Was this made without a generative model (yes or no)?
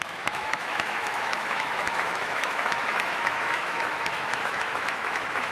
no